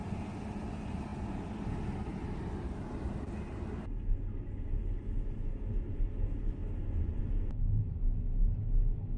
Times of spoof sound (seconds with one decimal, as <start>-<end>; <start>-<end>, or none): none